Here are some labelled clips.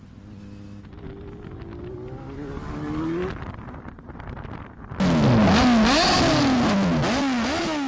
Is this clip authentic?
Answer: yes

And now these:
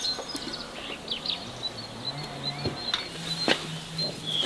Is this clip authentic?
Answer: yes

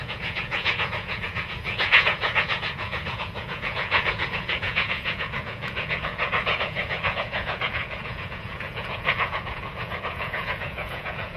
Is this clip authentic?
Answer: no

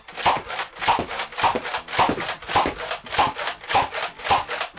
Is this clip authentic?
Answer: yes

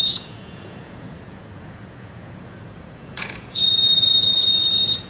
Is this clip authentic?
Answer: no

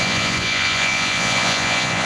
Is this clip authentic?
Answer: no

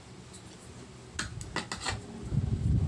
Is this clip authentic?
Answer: yes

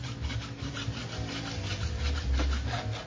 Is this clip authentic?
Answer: yes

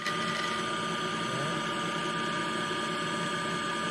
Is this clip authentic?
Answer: yes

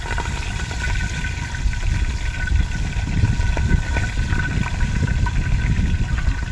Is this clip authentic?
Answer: yes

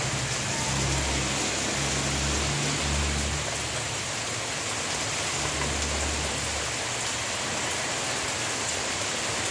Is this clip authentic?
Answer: yes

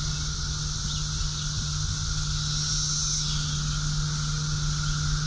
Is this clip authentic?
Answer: yes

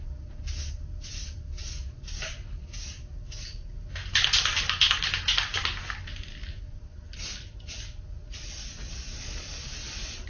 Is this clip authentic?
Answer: yes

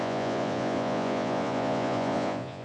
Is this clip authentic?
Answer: no